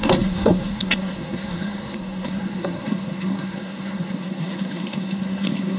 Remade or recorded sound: remade